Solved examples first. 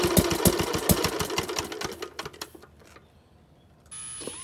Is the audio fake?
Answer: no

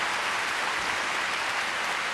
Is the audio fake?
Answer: no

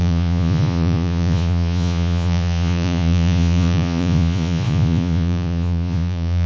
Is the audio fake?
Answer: yes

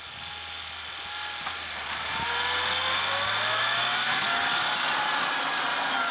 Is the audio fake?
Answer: no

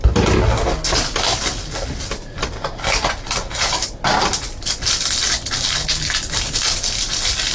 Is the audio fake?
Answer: no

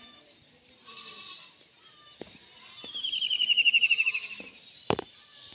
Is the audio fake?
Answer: no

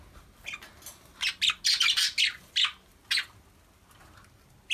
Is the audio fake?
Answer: no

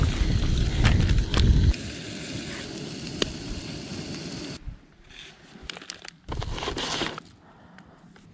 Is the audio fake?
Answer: no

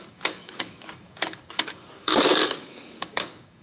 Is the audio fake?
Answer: yes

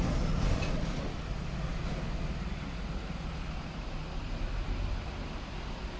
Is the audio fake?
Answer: no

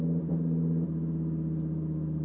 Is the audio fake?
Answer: no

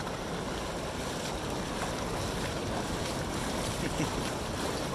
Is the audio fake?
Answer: yes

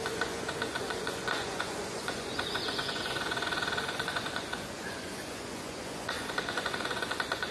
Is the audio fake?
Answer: yes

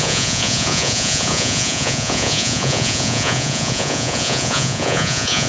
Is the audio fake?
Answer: yes